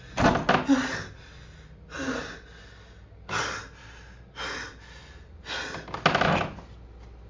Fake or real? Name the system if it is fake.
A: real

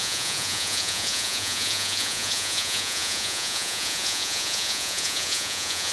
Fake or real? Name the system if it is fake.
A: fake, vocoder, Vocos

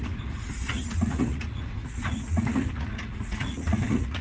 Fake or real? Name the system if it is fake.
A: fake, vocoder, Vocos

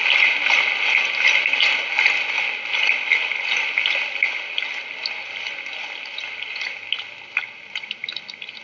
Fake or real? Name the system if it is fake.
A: real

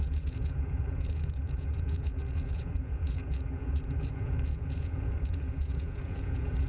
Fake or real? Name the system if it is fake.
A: fake, vocoder, Vocos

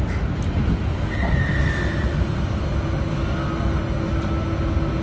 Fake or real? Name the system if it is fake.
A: real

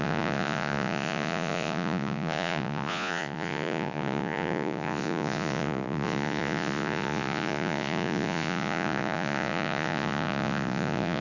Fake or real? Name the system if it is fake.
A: fake, vocoder, Vocos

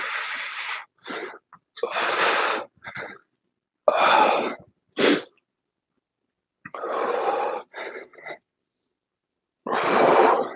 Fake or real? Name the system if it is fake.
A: real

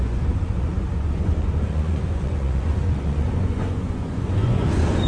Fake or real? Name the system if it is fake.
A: fake, vocoder, Vocos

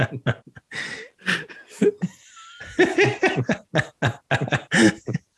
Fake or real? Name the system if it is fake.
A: real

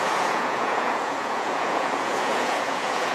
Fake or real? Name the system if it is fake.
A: fake, vocoder, Vocos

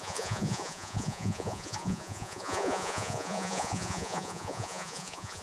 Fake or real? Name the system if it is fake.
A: fake, vocoder, Vocos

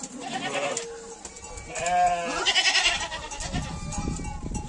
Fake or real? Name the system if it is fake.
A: real